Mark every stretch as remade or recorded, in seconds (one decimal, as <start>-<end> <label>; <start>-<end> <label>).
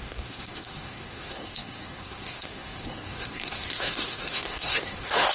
0.0-5.3 remade